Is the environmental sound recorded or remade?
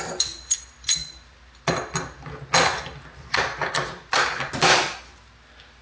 recorded